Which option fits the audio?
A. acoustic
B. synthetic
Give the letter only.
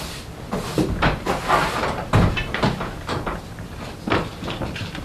A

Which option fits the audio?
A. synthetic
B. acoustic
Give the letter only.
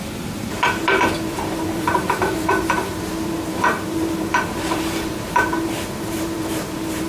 A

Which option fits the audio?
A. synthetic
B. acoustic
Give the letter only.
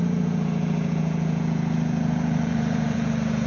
A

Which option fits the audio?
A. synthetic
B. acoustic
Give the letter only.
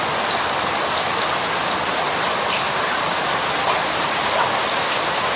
B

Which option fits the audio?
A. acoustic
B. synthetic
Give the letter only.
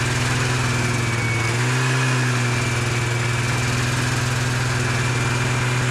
A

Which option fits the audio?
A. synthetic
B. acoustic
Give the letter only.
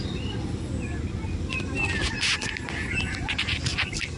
B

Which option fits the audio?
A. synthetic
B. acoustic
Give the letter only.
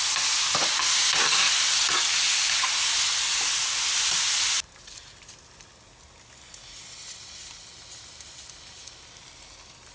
B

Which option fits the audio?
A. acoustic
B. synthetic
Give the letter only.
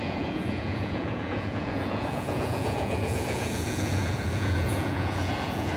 B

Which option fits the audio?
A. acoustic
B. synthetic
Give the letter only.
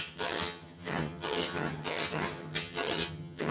B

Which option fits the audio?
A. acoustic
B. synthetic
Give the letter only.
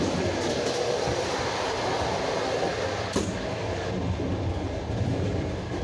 A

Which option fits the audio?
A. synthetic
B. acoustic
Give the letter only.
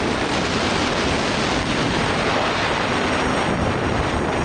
A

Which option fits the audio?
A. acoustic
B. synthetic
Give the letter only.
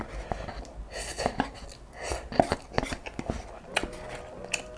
A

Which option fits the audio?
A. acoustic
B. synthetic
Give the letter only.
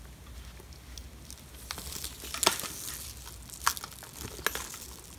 A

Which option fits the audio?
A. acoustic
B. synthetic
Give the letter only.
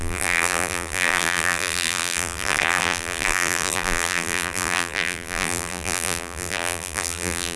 B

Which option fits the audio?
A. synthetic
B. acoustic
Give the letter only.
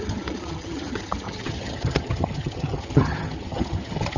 A